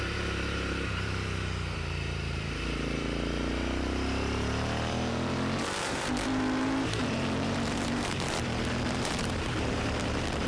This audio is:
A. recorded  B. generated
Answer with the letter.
B